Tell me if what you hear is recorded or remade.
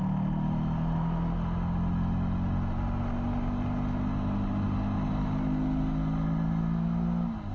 recorded